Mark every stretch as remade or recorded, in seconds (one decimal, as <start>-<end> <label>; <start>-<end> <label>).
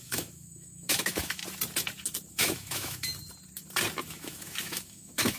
0.0-1.4 remade; 1.4-2.3 recorded; 2.3-3.1 remade; 3.1-4.1 recorded; 4.1-5.4 remade